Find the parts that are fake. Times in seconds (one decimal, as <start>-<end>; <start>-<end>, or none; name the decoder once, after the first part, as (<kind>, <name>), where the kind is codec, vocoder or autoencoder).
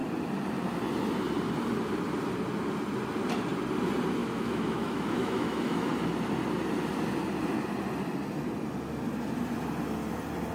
4.2-5.9 (autoencoder, DAC-VAE)